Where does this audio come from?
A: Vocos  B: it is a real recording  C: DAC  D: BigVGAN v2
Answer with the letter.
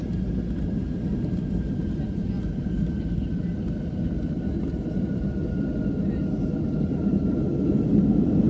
B